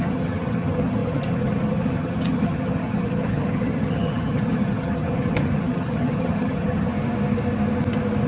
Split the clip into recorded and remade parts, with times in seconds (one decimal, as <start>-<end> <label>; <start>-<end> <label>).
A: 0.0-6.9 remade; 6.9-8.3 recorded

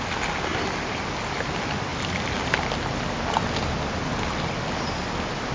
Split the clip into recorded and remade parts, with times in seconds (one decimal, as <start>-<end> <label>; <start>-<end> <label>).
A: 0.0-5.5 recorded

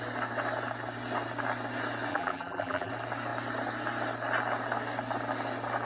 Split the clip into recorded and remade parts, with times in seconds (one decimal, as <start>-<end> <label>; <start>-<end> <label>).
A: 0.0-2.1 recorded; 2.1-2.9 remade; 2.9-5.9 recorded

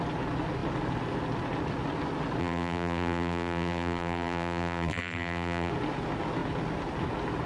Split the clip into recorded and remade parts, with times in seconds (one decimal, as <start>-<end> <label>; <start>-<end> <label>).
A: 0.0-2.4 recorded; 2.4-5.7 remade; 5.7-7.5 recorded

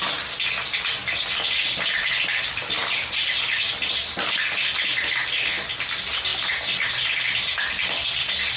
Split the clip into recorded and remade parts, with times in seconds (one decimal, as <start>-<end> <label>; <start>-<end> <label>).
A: 0.0-8.6 recorded

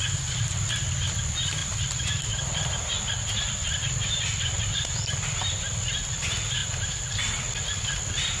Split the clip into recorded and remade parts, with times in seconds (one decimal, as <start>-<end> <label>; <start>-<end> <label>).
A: 0.0-8.4 recorded